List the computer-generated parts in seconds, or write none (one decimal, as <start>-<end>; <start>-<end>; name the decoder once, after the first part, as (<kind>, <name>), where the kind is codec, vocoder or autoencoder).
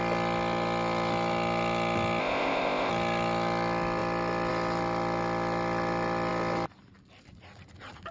2.2-2.9 (codec, ZipCodec)